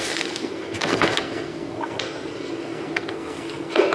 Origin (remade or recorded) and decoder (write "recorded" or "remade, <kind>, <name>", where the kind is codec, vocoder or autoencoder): remade, codec, SNAC